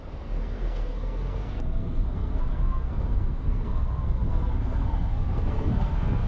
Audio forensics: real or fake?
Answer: fake